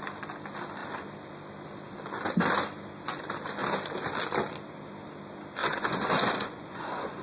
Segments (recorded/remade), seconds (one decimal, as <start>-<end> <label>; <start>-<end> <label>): 0.0-5.6 recorded; 5.6-7.2 remade